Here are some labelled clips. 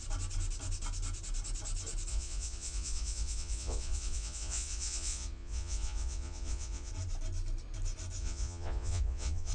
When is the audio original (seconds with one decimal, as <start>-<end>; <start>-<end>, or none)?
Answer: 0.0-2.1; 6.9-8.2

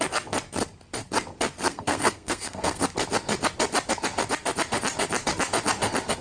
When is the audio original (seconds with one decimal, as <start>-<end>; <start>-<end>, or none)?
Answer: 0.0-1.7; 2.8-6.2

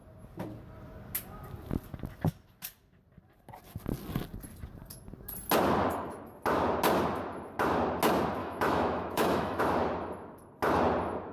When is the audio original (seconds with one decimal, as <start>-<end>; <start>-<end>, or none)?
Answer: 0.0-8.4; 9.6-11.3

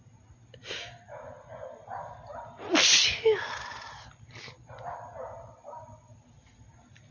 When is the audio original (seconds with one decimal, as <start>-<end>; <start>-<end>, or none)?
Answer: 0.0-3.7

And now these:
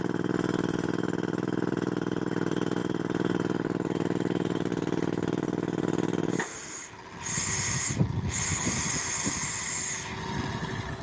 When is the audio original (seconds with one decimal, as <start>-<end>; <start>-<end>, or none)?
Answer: 0.0-11.0

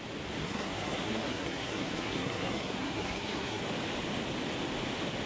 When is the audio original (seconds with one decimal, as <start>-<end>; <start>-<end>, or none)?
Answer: 0.0-0.4; 3.6-5.3